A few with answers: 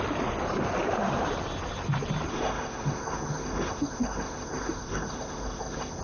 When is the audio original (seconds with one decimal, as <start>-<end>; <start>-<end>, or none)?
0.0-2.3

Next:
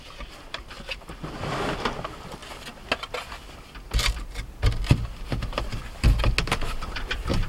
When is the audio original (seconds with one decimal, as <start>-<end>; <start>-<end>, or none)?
0.0-7.5

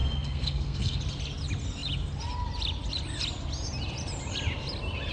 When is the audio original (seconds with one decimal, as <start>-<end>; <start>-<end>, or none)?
1.0-5.1